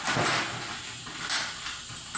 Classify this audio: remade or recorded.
recorded